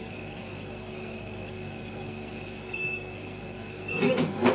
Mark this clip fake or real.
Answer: fake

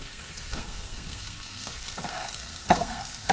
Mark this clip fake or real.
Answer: fake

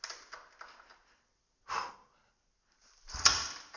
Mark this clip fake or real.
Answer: real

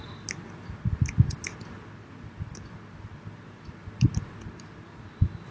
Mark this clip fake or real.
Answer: real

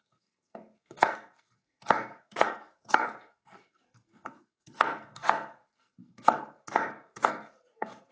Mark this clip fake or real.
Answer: fake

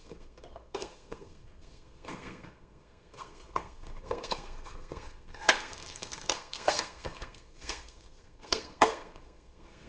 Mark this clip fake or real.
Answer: fake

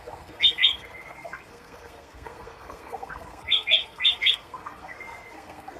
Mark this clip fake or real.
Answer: fake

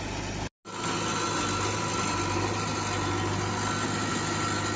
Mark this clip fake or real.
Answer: real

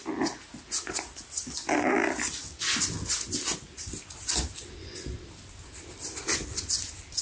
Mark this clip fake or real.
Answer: real